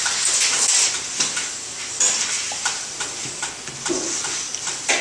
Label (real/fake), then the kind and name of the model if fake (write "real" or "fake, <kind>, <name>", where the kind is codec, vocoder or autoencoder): real